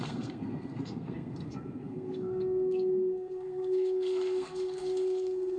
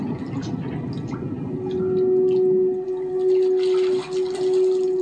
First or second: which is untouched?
second